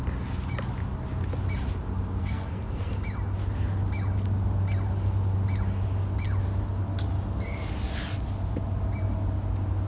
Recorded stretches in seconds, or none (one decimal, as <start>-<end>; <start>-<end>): 0.0-2.2; 2.9-9.9